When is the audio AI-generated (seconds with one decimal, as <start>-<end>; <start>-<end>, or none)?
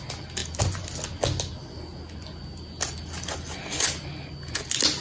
none